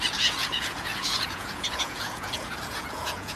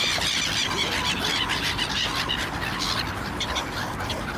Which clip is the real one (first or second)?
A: second